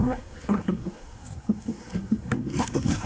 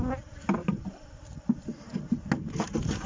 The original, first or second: second